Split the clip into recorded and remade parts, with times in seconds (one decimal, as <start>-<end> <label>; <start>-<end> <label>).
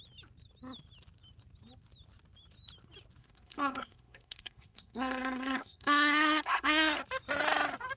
0.0-3.2 recorded; 3.2-7.0 remade; 7.0-8.0 recorded